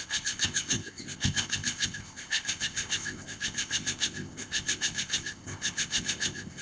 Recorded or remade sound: remade